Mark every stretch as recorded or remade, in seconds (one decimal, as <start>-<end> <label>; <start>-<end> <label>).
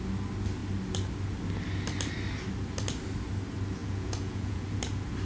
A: 0.0-3.8 recorded; 3.8-4.8 remade; 4.8-5.2 recorded